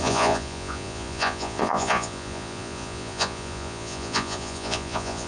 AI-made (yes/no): yes